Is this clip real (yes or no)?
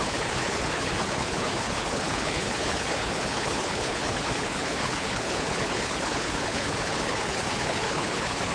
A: no